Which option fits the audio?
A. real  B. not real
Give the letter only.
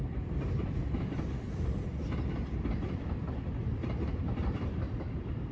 B